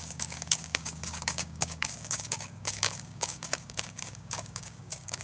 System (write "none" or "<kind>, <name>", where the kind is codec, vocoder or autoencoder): codec, DAC